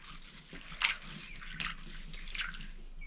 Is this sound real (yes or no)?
yes